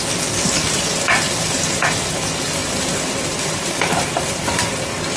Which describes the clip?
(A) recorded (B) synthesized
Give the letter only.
A